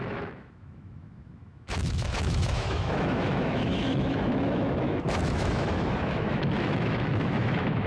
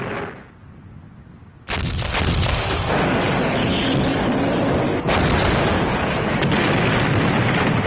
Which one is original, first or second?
second